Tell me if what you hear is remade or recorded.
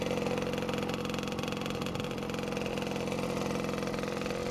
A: recorded